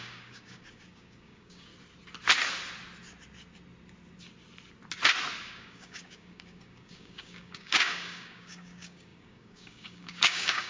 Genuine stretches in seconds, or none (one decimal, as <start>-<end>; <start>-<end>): 1.7-5.4